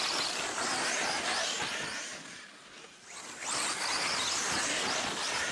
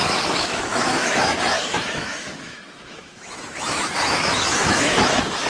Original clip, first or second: first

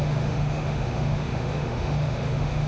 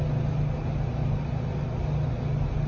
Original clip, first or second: second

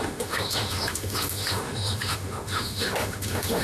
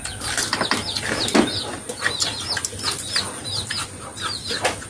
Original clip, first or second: second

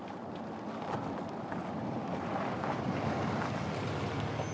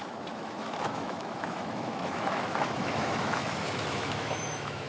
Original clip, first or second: first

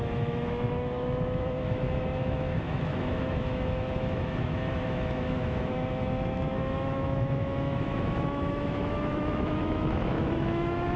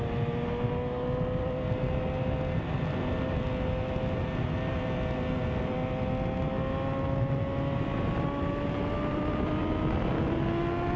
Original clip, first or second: second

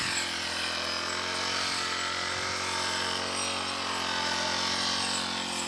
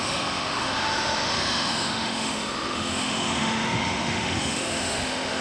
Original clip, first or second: first